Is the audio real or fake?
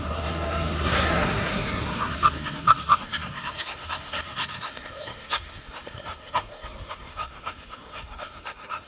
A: fake